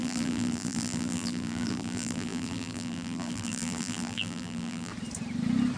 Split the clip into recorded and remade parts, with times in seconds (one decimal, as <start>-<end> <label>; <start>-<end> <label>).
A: 0.0-4.9 remade; 4.9-5.8 recorded